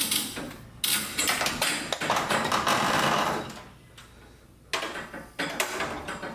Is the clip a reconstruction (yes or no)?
no